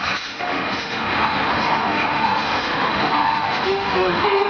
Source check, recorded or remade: remade